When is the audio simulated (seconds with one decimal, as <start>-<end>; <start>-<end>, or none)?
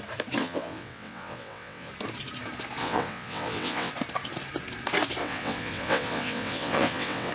0.4-1.9; 2.8-3.9; 5.2-7.3